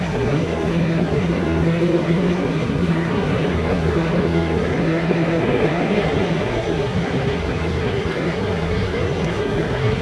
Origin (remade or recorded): remade